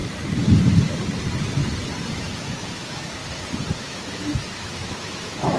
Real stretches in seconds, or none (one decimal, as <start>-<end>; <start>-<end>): 0.0-2.2; 3.2-3.8

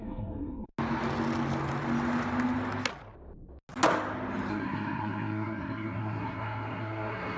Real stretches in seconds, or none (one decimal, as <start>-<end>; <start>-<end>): 0.7-4.5

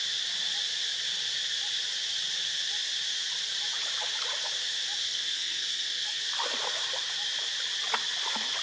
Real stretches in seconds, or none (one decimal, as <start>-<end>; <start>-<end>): 0.0-5.0; 6.2-8.6

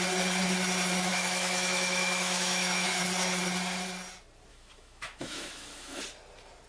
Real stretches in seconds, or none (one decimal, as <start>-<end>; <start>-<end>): 0.0-1.1; 3.0-4.5; 6.0-6.7